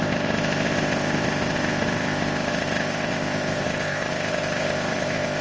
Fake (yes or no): yes